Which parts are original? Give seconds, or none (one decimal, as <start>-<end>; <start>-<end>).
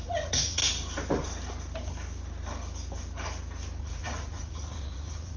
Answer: 0.6-3.8